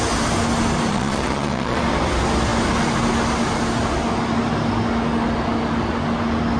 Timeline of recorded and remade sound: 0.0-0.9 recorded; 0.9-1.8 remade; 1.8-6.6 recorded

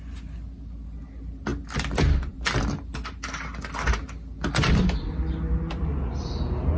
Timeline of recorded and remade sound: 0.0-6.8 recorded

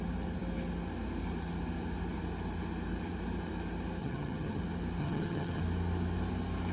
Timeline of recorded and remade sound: 0.0-4.0 recorded; 4.0-4.6 remade; 4.6-5.0 recorded; 5.0-5.6 remade; 5.6-6.7 recorded

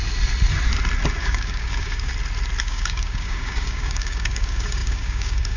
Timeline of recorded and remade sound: 0.0-1.2 recorded; 1.2-2.1 remade; 2.1-2.6 recorded; 2.6-5.6 remade